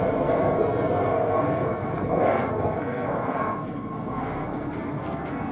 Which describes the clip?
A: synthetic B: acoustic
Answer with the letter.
A